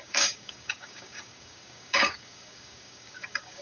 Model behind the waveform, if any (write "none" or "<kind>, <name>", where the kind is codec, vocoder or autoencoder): codec, DAC